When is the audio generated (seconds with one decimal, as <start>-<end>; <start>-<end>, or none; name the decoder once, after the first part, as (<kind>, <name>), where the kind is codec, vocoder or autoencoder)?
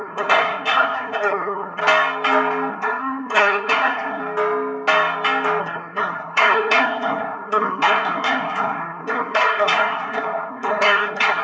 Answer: 0.0-1.8 (codec, SNAC); 2.7-4.2; 5.6-11.4